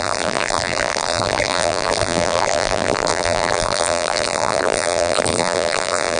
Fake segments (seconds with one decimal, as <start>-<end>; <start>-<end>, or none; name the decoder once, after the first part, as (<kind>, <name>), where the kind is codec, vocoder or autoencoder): 0.0-6.2 (vocoder, BigVGAN v2)